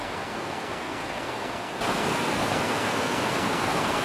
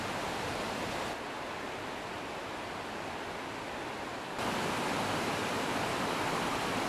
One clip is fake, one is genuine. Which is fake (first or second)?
first